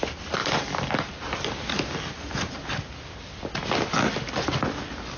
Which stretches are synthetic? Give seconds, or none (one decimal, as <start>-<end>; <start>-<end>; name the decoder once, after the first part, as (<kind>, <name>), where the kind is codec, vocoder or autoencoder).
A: none